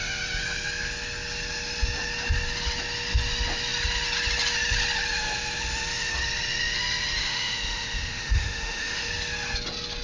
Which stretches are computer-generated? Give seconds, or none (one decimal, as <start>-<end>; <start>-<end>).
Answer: 7.2-9.1